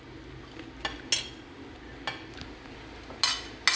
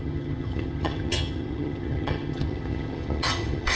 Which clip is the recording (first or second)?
first